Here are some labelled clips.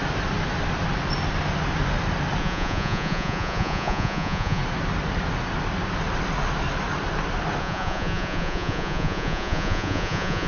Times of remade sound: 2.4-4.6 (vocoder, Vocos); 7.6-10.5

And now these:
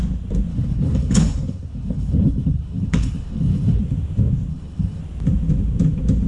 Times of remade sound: 0.5-3.8 (codec, HILCodec); 4.5-5.0

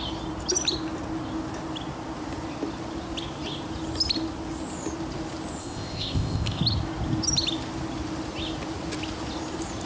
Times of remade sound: 5.6-6.6 (codec, ZipCodec)

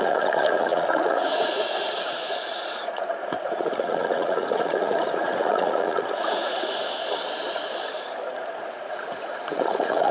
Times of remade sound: 0.0-6.8 (vocoder, Vocos); 8.3-10.1

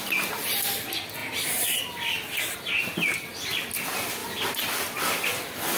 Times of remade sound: none

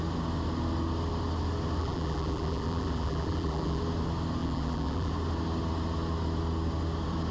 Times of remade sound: 1.8-3.8 (vocoder, BigVGAN v2); 4.4-5.1